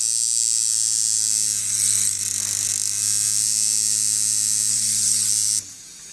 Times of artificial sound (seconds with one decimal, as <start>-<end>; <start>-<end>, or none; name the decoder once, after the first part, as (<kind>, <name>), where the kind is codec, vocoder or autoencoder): 1.6-2.2 (codec, SNAC); 4.7-5.3